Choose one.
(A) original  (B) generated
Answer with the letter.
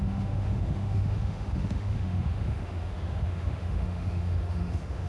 B